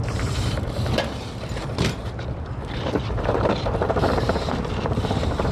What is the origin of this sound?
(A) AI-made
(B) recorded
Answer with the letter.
A